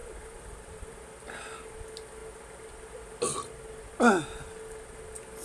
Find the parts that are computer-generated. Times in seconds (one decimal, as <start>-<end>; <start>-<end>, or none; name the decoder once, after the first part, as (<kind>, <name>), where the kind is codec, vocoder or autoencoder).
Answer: 0.0-1.0 (vocoder, BigVGAN v2)